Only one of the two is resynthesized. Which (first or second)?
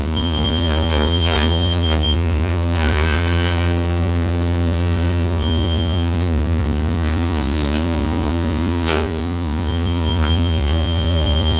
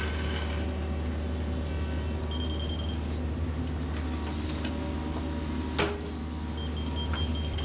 first